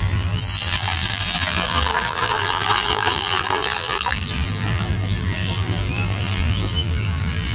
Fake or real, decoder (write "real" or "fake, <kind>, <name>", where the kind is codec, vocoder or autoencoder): fake, vocoder, BigVGAN v2